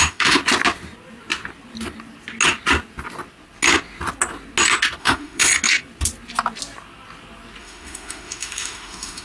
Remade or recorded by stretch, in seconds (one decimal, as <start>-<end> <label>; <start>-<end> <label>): 0.0-0.4 remade; 0.4-5.0 recorded; 5.0-5.5 remade; 5.5-7.6 recorded; 7.6-9.2 remade

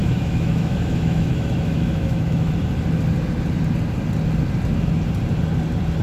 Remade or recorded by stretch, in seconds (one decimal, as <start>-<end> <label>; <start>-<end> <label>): 0.0-2.5 remade; 2.5-6.0 recorded

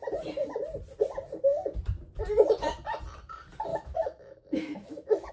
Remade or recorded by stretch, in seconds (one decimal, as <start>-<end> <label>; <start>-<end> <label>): 0.0-3.7 recorded; 3.7-5.3 remade

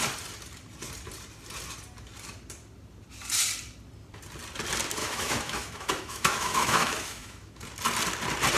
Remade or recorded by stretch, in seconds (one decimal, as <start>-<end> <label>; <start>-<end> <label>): 0.0-5.0 recorded; 5.0-7.6 remade; 7.6-8.6 recorded

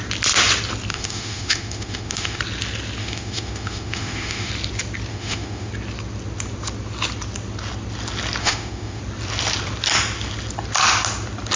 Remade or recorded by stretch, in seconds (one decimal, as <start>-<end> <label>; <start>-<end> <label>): 0.0-0.9 recorded; 0.9-2.4 remade; 2.4-3.0 recorded; 3.0-4.5 remade; 4.5-5.1 recorded; 5.1-5.7 remade; 5.7-8.4 recorded; 8.4-9.0 remade; 9.0-11.6 recorded

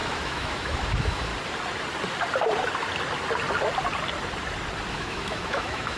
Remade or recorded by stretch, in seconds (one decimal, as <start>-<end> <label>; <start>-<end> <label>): 0.0-1.3 remade; 1.3-4.9 recorded; 4.9-6.0 remade

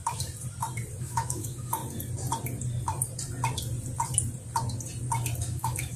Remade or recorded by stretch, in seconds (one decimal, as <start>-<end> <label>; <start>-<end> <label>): 0.0-1.0 recorded; 1.0-1.8 remade; 1.8-5.4 recorded; 5.4-6.0 remade